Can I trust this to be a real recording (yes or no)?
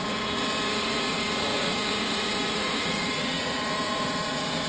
no